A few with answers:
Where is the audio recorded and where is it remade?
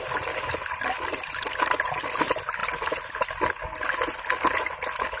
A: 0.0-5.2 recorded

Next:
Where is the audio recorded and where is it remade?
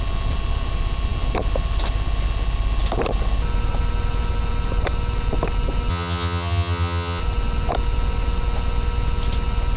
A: 0.0-5.9 recorded; 5.9-7.2 remade; 7.2-9.8 recorded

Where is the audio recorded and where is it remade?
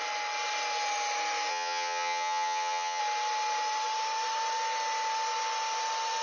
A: 0.0-1.5 recorded; 1.5-3.0 remade; 3.0-6.2 recorded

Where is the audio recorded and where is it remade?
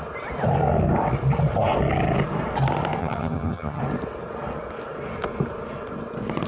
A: 0.0-3.0 recorded; 3.0-3.8 remade; 3.8-6.5 recorded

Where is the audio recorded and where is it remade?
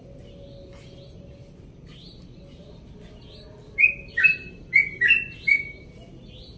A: 0.0-6.6 recorded